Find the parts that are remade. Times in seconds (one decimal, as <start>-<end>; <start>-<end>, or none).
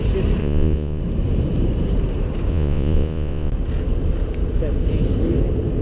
0.4-1.0; 2.5-3.5